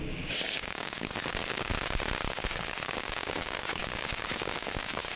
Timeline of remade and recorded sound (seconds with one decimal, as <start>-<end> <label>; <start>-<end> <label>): 0.0-1.7 remade; 1.7-2.3 recorded; 2.3-5.2 remade